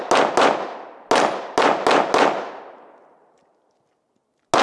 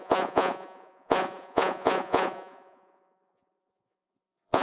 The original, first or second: first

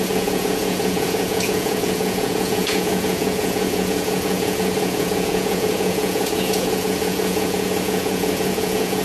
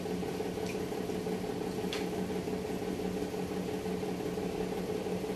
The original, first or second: second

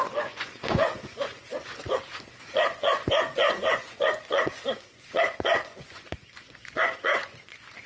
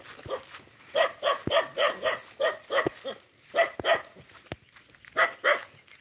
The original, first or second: second